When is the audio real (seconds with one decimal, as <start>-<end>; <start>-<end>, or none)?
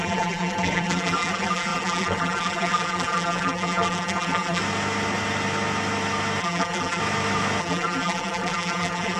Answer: 4.6-6.4; 7.0-7.6